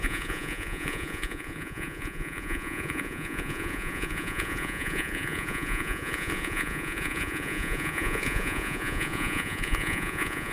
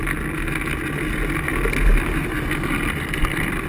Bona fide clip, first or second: second